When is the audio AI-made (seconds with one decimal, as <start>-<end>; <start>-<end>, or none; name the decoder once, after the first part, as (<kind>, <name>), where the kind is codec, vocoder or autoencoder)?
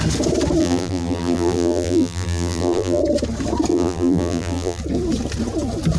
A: 0.6-3.0 (vocoder, BigVGAN v2); 3.7-4.8